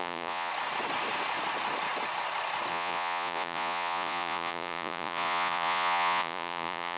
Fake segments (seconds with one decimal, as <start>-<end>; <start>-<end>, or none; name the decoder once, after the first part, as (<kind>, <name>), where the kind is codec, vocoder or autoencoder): 0.0-0.5 (vocoder, Vocos); 2.7-7.0

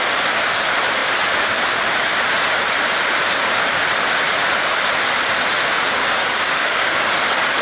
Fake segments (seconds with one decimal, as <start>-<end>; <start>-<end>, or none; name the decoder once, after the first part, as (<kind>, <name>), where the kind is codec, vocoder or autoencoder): 6.0-7.1 (codec, DAC)

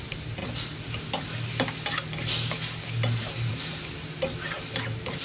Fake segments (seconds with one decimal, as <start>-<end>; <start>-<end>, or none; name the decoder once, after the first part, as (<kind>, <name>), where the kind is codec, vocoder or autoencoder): none

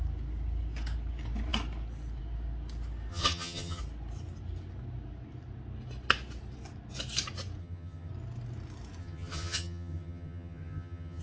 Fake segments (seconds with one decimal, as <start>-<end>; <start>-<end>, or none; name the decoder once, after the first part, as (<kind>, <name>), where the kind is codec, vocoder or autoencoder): 3.1-3.8 (vocoder, HiFi-GAN); 7.6-8.1; 9.0-11.2

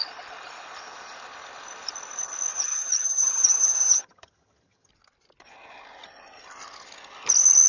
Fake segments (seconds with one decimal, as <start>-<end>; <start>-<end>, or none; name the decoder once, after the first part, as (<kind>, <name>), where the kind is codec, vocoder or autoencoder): 2.5-4.9 (vocoder, HiFi-GAN)